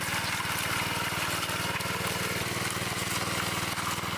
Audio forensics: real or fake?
real